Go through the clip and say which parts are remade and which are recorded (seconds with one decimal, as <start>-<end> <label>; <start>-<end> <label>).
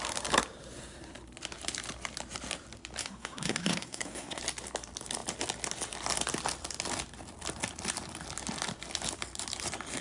0.0-3.0 recorded; 3.0-4.4 remade; 4.4-10.0 recorded